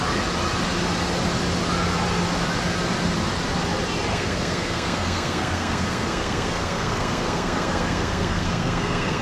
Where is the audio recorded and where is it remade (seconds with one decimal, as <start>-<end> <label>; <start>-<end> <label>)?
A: 0.0-4.1 recorded; 4.1-9.2 remade